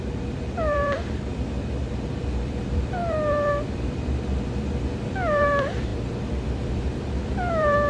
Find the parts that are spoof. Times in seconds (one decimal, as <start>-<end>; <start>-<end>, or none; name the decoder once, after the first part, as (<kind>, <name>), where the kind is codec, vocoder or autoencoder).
0.0-7.9 (vocoder, BigVGAN v2)